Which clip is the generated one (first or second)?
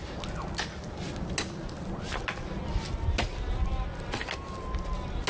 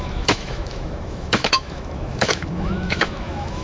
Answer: second